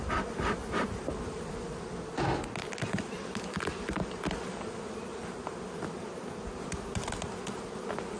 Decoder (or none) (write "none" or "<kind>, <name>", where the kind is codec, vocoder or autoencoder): none